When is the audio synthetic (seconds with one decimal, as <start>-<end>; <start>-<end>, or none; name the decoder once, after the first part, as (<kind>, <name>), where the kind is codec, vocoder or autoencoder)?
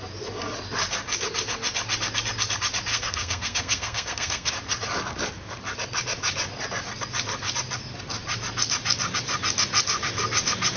2.9-4.5 (codec, SNAC)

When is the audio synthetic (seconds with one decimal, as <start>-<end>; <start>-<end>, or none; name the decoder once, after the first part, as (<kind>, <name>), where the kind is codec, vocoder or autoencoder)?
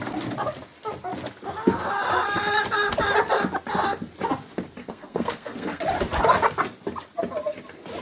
4.8-5.8 (codec, SNAC)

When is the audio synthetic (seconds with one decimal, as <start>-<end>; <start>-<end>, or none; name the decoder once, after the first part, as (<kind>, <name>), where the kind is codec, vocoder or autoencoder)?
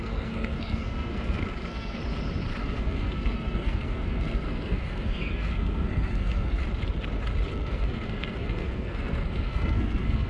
0.0-2.0 (codec, SNAC); 2.6-6.6; 7.5-10.3